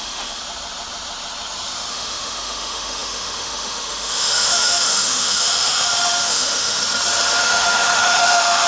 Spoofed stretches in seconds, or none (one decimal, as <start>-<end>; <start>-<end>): 0.0-0.4; 1.9-6.8; 7.4-8.7